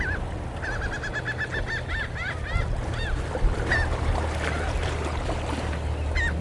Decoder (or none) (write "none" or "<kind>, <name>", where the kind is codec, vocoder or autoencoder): none